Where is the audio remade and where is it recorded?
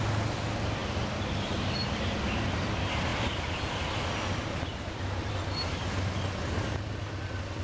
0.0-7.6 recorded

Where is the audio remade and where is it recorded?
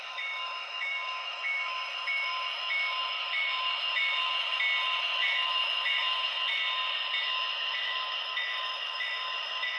0.0-4.5 remade; 4.5-5.0 recorded; 5.0-6.6 remade; 6.6-7.2 recorded; 7.2-9.8 remade